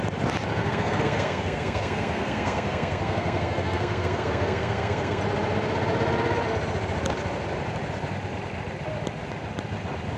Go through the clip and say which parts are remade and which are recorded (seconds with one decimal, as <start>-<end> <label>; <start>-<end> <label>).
0.0-0.6 recorded; 0.6-5.2 remade; 5.2-10.2 recorded